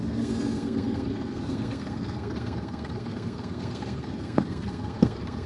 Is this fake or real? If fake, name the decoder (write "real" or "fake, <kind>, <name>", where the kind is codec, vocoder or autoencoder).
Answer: fake, codec, SNAC